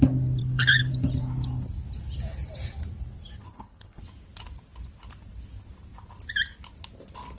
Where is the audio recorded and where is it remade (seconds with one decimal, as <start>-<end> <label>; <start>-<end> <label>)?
0.0-0.4 recorded; 0.4-0.9 remade; 0.9-3.5 recorded; 3.5-4.0 remade; 4.0-7.4 recorded